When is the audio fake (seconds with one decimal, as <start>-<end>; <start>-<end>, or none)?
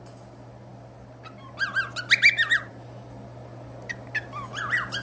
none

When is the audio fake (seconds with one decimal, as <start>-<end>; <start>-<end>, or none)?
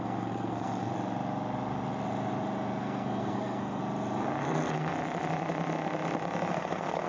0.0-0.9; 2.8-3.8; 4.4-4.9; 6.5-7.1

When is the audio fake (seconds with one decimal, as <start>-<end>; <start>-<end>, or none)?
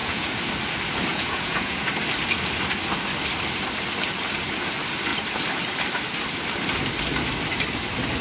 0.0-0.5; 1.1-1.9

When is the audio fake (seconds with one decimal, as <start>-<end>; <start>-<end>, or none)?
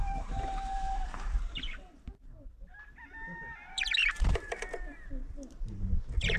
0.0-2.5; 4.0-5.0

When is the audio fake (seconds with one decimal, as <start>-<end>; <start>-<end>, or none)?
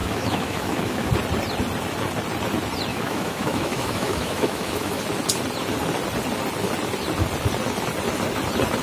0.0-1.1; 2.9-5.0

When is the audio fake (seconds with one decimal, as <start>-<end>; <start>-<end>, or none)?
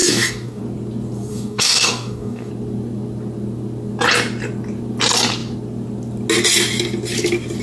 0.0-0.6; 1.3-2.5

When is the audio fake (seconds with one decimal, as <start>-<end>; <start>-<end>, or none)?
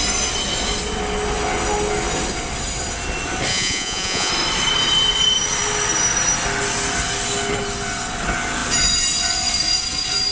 3.5-4.3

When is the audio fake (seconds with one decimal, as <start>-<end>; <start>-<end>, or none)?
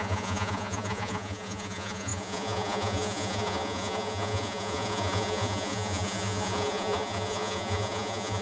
0.0-8.4